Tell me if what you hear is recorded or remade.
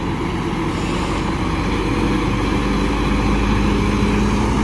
recorded